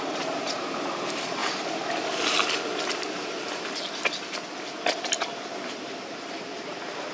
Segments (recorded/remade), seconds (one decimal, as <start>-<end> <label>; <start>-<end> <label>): 0.0-1.4 remade; 1.4-5.7 recorded; 5.7-7.1 remade